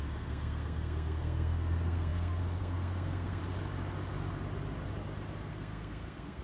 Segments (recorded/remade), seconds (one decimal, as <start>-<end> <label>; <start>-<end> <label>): 0.0-3.4 remade; 3.4-5.5 recorded; 5.5-6.4 remade